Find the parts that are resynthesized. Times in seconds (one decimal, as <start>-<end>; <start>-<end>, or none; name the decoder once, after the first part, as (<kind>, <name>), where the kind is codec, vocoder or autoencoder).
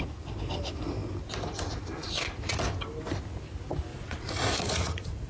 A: 3.9-5.3 (vocoder, Vocos)